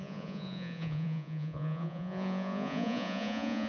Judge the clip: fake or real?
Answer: fake